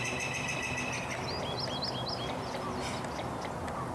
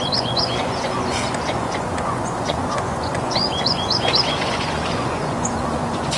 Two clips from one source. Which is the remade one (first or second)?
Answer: second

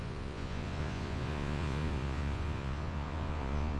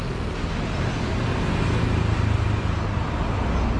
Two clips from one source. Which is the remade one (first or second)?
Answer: first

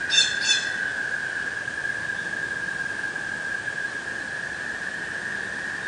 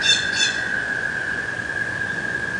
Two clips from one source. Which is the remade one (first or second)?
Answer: second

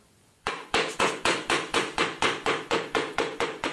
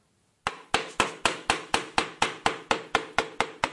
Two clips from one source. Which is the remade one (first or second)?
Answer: first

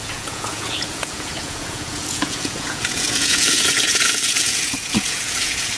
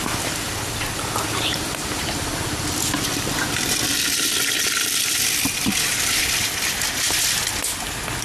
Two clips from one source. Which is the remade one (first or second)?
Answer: first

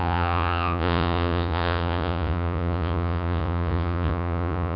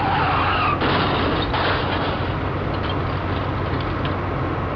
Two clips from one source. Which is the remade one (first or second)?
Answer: first